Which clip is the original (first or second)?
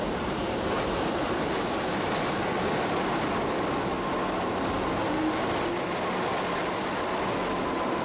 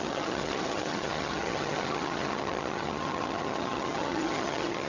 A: first